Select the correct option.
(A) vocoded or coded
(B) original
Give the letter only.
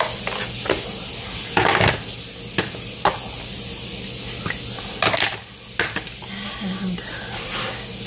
B